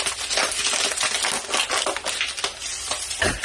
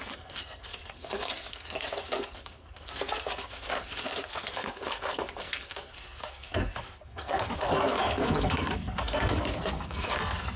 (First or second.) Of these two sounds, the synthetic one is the second